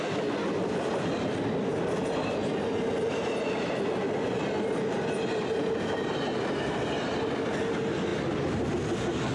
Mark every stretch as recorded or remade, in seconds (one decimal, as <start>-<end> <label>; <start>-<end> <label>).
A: 0.0-9.3 recorded